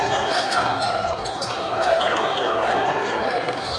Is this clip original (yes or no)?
no